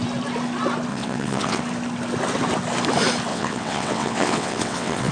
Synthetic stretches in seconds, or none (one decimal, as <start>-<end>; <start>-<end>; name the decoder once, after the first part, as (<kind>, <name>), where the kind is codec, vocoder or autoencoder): 0.9-1.6 (vocoder, WaveNeXt); 3.3-5.1